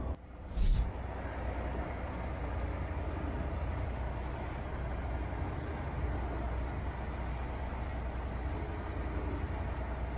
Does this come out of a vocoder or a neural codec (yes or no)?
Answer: no